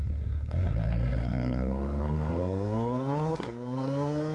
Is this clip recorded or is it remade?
remade